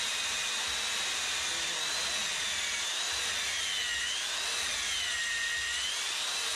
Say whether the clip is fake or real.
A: real